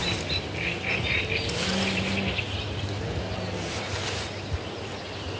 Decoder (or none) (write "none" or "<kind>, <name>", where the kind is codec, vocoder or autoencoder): none